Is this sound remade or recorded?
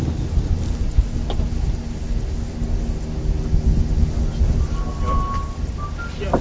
recorded